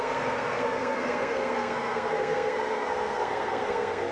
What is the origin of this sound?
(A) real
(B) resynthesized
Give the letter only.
B